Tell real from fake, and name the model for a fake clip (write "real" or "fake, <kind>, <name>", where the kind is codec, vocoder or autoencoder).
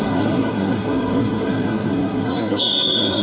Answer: fake, codec, SNAC